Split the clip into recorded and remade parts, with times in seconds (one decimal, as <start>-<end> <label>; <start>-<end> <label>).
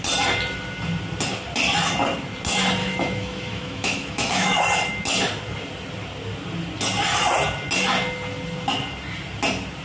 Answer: 0.0-2.8 recorded; 2.8-4.6 remade; 4.6-9.8 recorded